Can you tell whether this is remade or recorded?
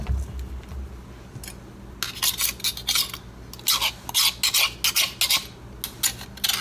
recorded